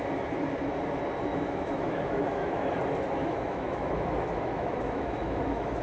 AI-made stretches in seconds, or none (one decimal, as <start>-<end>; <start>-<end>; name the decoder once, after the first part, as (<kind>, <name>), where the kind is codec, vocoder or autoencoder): 1.3-2.7 (autoencoder, DAC-VAE); 3.2-5.8